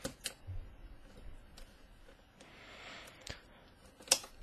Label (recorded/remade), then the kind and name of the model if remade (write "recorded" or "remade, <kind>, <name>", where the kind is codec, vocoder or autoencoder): recorded